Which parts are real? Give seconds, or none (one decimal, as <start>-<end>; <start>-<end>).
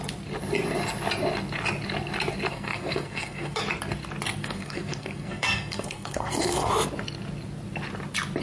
0.0-2.5; 3.6-4.4; 6.7-8.4